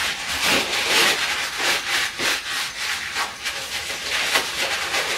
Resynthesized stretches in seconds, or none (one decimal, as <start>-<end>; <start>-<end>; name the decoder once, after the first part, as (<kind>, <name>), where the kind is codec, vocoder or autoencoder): 0.0-1.0 (vocoder, BigVGAN v2); 4.1-5.2